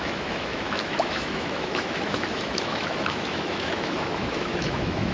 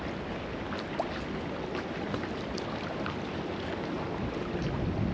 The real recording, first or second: second